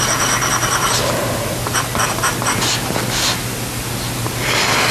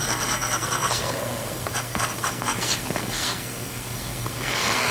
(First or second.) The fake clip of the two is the second